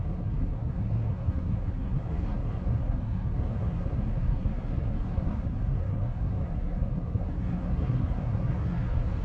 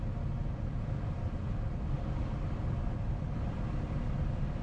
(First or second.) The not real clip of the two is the first